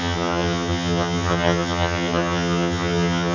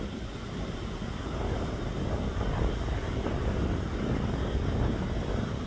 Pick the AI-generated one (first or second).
first